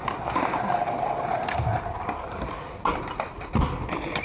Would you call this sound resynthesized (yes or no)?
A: no